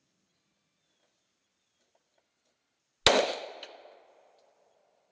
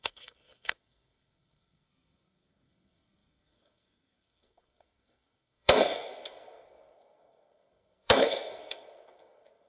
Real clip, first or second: first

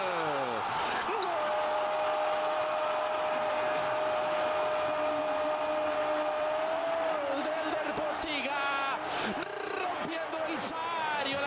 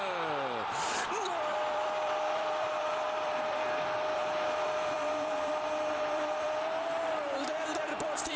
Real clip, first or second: first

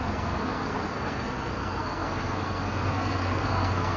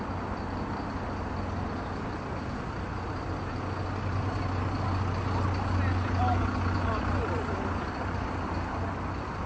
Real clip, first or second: second